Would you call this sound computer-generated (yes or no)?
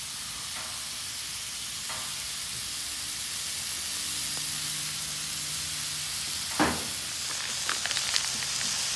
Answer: no